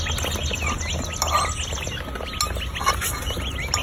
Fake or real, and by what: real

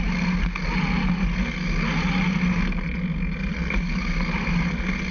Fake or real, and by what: real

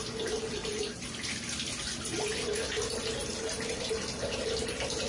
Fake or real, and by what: real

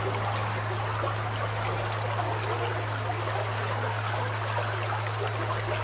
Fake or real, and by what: real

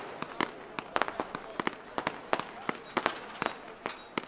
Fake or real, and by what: real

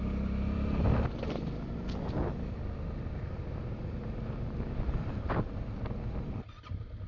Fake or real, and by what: fake, vocoder, BigVGAN v2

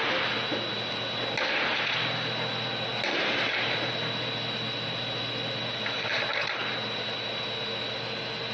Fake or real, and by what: real